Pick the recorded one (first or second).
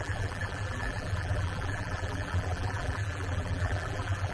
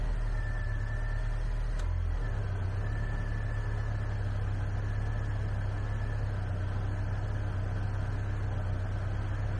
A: second